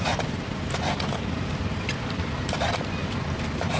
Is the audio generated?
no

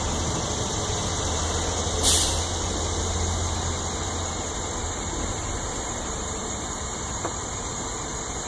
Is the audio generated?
no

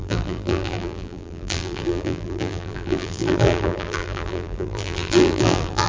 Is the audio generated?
yes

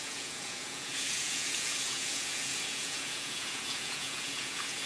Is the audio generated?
yes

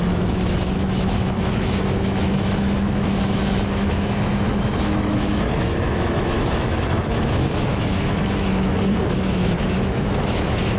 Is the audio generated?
yes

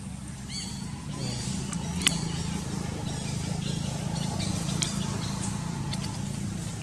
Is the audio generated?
no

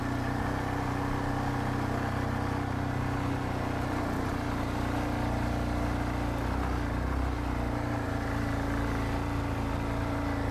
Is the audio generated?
no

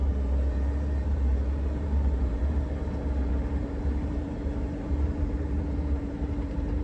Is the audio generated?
yes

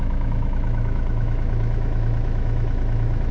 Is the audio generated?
yes